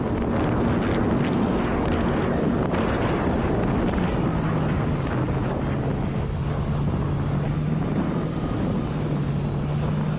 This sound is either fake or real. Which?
real